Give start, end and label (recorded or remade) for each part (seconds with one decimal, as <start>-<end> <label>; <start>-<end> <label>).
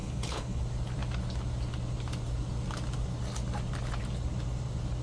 0.0-0.6 remade; 0.6-5.0 recorded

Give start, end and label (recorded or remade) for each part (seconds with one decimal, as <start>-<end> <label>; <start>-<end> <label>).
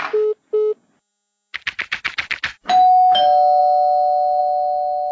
0.0-5.1 recorded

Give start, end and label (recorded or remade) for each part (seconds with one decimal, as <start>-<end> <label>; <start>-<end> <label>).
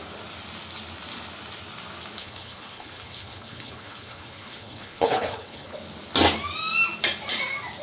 0.0-2.2 recorded; 2.2-5.8 remade; 5.8-7.8 recorded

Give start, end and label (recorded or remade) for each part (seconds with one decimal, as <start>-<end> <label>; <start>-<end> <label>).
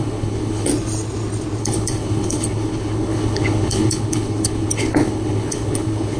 0.0-0.7 remade; 0.7-1.6 recorded; 1.6-6.2 remade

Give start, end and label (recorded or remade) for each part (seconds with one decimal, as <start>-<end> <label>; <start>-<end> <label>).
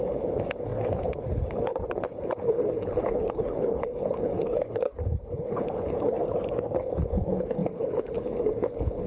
0.0-6.2 remade; 6.2-6.8 recorded; 6.8-9.1 remade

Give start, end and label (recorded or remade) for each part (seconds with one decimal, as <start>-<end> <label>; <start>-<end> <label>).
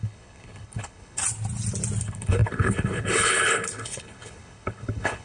0.0-1.2 remade; 1.2-2.0 recorded; 2.0-5.2 remade